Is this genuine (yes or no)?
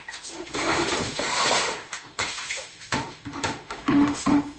no